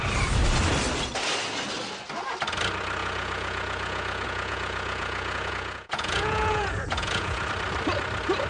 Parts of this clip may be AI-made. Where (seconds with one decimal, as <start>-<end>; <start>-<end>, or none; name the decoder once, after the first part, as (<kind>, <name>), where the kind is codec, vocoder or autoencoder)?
3.0-7.5 (vocoder, Vocos)

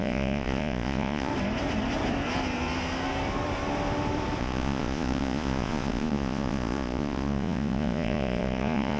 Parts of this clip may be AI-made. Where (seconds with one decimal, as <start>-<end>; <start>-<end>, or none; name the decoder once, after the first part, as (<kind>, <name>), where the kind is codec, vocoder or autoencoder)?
0.0-1.3 (vocoder, Vocos); 4.4-9.0

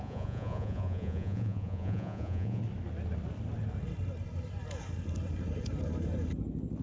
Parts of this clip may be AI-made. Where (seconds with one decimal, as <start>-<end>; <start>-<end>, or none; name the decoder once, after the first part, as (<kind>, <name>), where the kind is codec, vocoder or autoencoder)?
0.0-2.6 (vocoder, Vocos)

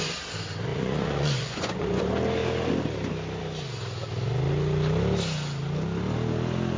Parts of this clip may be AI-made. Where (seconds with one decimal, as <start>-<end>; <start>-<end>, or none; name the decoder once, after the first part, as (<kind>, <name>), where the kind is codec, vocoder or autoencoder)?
0.7-2.0 (vocoder, Vocos)

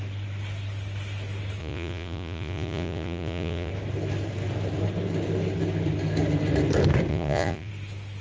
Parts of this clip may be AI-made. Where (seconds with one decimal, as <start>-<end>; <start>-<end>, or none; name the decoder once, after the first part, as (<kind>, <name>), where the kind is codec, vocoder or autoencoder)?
1.6-3.7 (vocoder, Vocos); 7.1-7.7